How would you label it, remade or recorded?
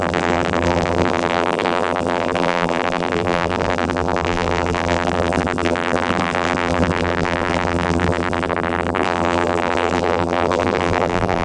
remade